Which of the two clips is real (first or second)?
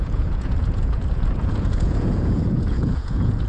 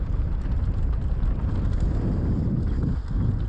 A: second